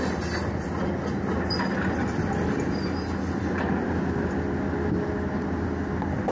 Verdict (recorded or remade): recorded